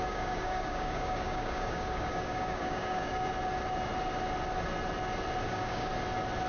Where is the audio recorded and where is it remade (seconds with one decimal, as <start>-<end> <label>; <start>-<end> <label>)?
0.0-3.3 remade; 3.3-5.5 recorded; 5.5-5.9 remade; 5.9-6.5 recorded